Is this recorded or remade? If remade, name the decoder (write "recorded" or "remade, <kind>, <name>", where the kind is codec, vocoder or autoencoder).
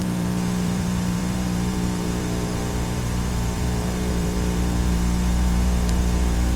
remade, vocoder, BigVGAN v2